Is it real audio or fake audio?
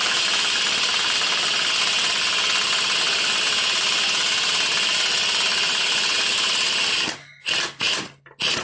real